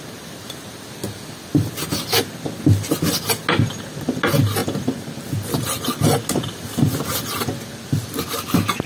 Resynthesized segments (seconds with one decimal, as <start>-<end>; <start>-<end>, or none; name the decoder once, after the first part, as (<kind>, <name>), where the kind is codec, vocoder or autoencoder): none